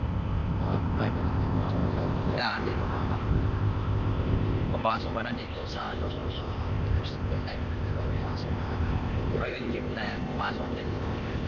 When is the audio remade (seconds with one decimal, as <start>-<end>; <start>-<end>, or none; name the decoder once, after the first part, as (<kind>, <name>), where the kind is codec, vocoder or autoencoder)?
0.0-11.5 (codec, ZipCodec)